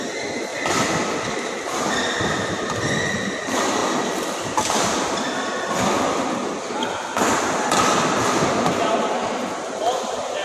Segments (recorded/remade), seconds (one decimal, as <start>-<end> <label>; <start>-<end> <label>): 0.0-10.4 recorded